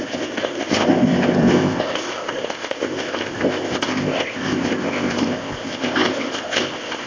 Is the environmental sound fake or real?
fake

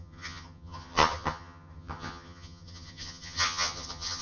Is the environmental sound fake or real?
fake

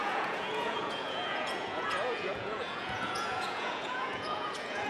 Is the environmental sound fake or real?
fake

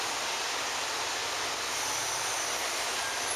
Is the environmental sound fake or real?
real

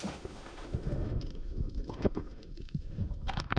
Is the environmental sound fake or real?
fake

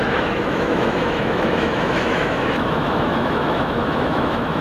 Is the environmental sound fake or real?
fake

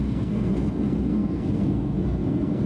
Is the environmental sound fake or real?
fake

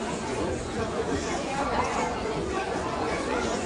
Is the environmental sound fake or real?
fake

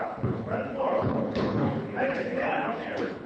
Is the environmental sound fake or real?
fake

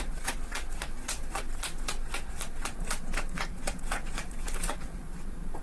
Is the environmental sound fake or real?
fake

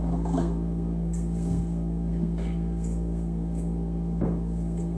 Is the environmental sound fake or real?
fake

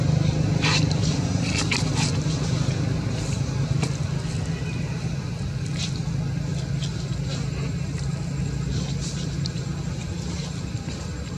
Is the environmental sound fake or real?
real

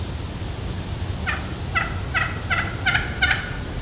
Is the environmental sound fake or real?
real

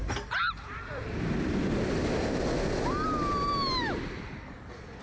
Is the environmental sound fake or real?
real